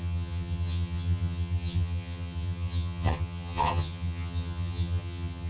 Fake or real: fake